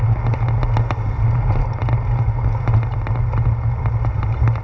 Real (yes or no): yes